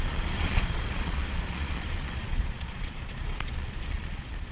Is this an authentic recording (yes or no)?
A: no